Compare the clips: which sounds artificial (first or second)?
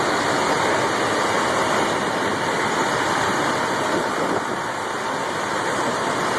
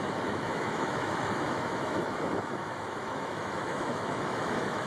second